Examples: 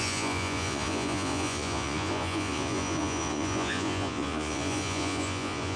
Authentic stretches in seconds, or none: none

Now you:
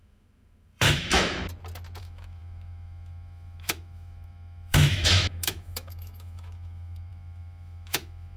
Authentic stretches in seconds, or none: 1.4-2.0

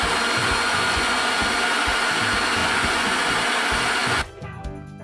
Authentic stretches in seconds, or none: 0.0-0.4; 1.4-2.6; 3.3-4.0; 4.6-5.0

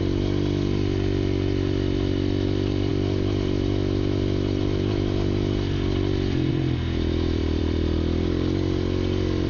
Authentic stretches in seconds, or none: none

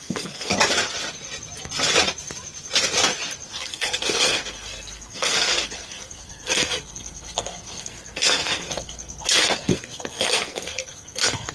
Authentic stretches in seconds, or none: 0.5-3.5

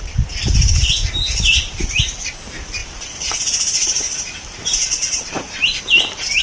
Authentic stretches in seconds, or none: 0.0-0.5; 2.0-2.8; 5.8-6.4

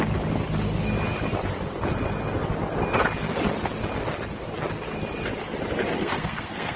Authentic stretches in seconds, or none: 0.0-5.9

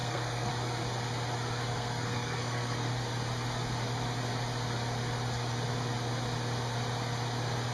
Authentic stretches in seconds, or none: 0.5-1.7; 2.9-7.7